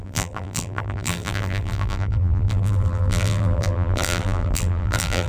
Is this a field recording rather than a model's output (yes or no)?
no